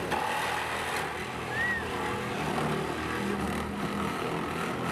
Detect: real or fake real